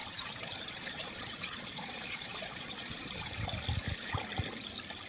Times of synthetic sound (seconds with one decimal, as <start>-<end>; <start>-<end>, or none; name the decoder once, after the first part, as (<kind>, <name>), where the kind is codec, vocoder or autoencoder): 0.0-3.1 (vocoder, Vocos)